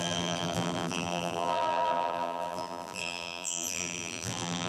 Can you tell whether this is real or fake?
fake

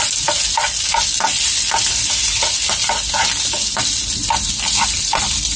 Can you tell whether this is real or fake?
real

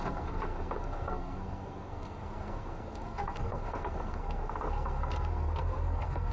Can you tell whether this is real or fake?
fake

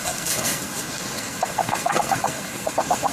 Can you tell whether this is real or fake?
fake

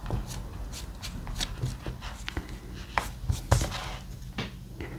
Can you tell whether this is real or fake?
real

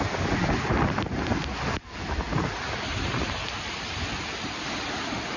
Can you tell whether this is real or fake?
real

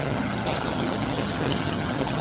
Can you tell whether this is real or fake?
fake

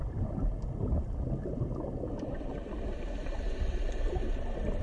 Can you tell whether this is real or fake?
real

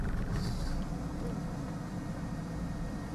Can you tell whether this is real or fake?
real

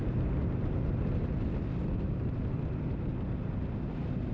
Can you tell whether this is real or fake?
real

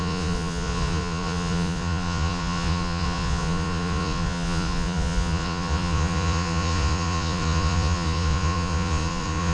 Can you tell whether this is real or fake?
fake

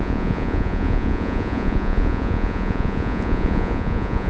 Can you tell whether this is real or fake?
fake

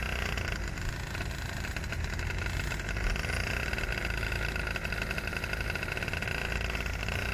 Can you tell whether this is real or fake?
real